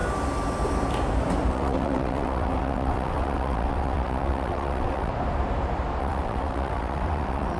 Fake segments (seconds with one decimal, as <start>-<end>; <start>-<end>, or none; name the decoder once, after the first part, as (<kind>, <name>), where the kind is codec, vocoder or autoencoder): 1.5-5.1 (vocoder, WaveNeXt); 6.0-7.6